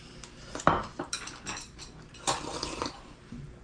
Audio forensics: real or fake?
real